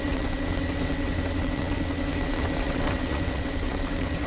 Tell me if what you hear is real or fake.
fake